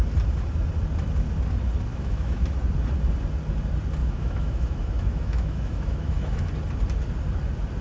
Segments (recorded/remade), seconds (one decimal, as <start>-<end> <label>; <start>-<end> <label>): 0.0-1.9 recorded; 1.9-2.5 remade; 2.5-4.0 recorded; 4.0-6.4 remade; 6.4-7.8 recorded